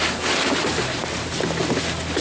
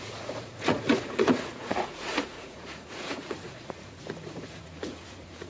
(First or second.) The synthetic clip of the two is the second